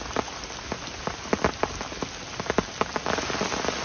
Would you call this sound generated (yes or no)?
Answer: no